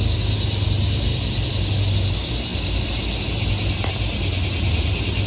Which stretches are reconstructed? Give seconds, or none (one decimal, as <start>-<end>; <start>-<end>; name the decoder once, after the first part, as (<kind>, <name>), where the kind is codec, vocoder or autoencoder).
none